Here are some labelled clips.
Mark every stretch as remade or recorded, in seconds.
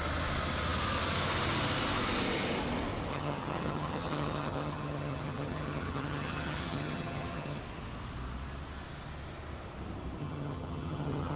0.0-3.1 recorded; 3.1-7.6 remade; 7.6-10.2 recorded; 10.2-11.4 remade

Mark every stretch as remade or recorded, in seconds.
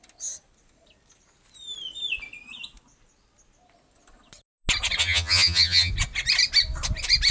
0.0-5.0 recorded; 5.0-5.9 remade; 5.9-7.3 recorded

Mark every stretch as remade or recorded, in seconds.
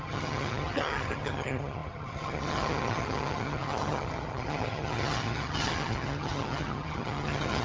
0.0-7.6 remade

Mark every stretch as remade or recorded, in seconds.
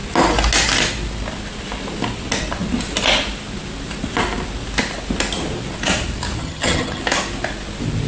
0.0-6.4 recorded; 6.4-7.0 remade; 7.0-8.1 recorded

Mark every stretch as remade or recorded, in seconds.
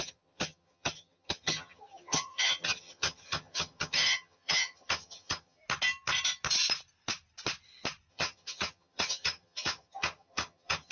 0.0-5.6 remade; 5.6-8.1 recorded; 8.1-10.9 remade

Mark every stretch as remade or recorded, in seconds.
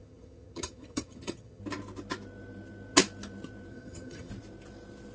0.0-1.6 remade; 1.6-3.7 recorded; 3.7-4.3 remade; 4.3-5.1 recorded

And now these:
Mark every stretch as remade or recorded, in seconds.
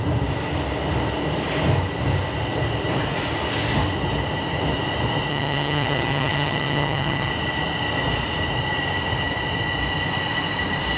0.0-5.3 recorded; 5.3-7.3 remade; 7.3-11.0 recorded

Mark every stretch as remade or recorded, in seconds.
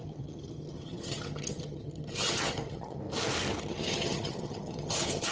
0.0-3.0 remade; 3.0-3.6 recorded; 3.6-5.3 remade